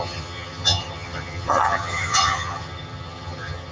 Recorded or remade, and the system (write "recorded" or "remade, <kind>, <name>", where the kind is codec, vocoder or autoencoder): remade, vocoder, HiFi-GAN